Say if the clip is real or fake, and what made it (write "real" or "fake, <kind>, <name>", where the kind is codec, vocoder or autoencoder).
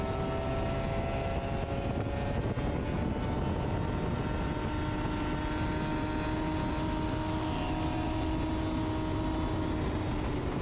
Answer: real